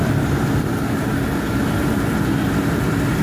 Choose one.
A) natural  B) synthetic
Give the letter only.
A